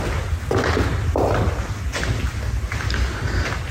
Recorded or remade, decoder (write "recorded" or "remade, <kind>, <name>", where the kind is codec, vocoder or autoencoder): recorded